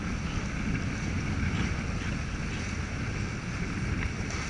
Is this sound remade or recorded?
recorded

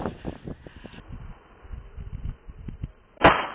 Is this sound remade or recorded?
recorded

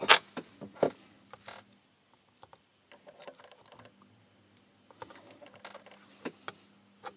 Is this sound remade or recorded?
recorded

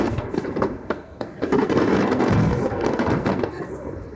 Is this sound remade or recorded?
remade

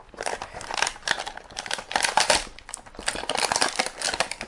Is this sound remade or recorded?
recorded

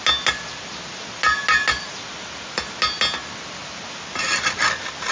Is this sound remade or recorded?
recorded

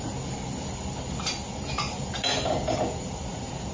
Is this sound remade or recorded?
recorded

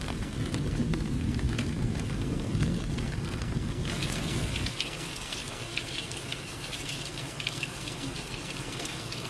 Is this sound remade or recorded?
remade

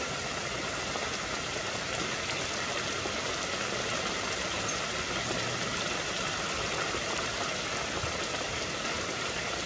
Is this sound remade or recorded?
recorded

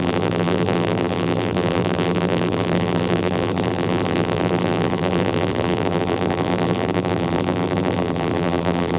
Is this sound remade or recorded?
remade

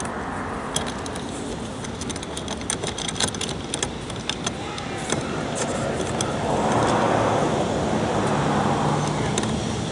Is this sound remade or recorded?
recorded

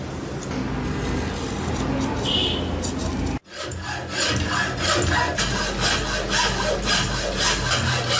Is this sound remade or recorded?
recorded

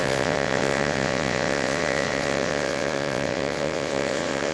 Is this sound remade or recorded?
remade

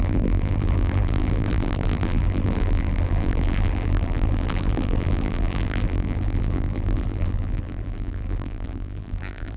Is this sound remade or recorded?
remade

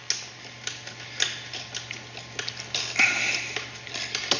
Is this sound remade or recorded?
recorded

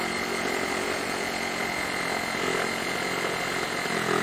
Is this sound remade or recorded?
remade